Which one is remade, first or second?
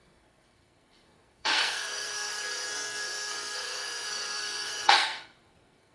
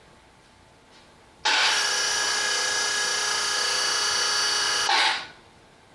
first